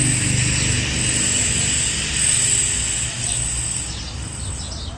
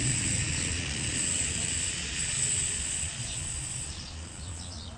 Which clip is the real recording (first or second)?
first